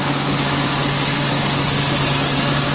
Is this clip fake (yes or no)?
yes